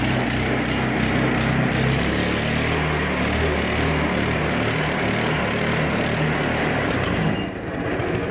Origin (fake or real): real